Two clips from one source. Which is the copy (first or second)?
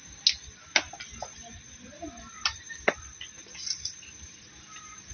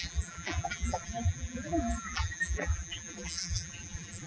second